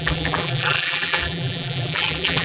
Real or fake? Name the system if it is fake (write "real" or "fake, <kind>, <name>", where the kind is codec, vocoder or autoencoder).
fake, vocoder, BigVGAN v2